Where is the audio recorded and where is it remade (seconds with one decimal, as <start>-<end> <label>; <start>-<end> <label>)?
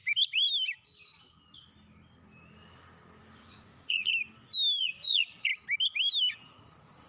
0.0-3.4 recorded; 3.4-4.1 remade; 4.1-4.8 recorded; 4.8-5.5 remade; 5.5-6.3 recorded; 6.3-7.1 remade